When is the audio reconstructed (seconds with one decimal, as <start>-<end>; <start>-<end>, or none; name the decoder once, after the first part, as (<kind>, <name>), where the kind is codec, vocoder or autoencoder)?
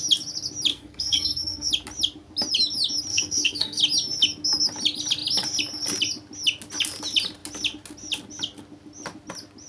0.7-1.7 (codec, SNAC); 3.1-3.8